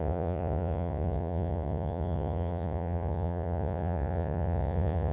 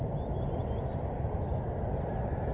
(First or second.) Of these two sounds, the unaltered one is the second